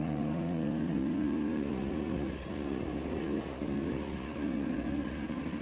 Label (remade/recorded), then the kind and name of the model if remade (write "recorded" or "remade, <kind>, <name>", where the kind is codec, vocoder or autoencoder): remade, vocoder, Vocos